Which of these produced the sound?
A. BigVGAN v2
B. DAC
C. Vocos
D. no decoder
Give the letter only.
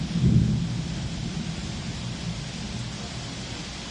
D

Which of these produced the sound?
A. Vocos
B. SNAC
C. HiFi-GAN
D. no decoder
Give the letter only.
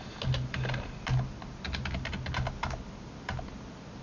D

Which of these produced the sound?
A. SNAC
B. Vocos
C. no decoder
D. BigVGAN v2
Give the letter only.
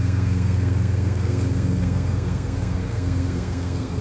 A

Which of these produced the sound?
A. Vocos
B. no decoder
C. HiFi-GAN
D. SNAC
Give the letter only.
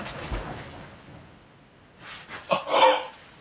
B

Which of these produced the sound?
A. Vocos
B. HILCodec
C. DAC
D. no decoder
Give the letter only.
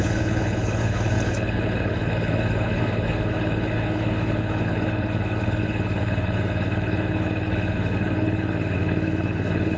B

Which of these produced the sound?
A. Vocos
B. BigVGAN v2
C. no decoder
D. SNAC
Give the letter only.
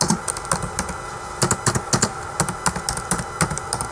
C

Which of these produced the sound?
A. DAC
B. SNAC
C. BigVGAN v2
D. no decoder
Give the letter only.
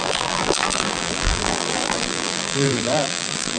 C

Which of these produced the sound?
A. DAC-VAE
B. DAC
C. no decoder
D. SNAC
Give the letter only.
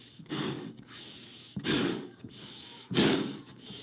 B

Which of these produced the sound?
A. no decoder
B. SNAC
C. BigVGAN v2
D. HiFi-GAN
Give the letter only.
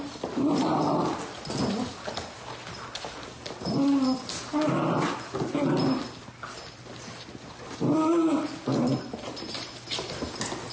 A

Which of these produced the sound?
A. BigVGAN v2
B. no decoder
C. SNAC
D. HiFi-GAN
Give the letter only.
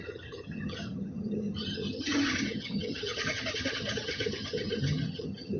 D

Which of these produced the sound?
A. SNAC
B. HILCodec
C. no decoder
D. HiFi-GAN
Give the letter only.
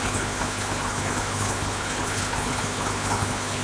B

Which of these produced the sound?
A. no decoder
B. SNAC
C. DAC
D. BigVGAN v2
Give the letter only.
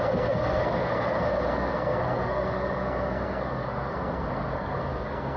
B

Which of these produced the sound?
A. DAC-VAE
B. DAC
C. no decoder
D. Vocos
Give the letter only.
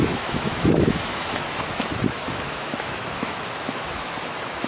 A